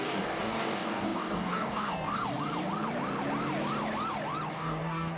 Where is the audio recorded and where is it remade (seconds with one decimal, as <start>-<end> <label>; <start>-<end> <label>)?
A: 0.0-2.2 remade; 2.2-4.5 recorded; 4.5-5.2 remade